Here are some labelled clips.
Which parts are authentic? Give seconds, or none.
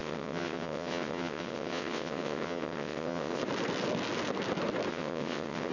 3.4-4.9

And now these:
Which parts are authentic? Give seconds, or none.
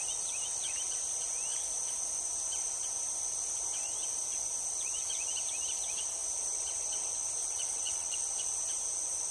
0.0-7.4; 8.2-9.3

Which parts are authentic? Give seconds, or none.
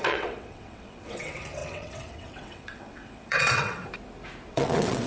3.8-4.5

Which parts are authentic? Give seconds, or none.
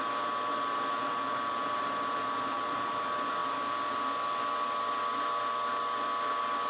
0.0-6.7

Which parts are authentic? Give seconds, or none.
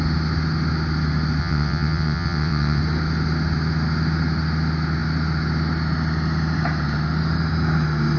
0.0-1.4; 2.8-8.2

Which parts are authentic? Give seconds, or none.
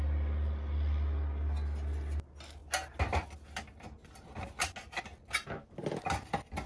0.0-6.7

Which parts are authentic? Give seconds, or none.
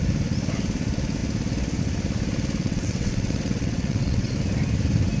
0.0-2.6; 4.3-5.2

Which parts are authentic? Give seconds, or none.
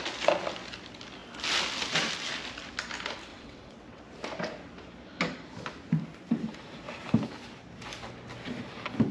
0.0-3.3; 4.0-9.1